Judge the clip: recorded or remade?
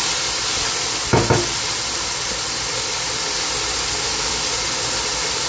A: recorded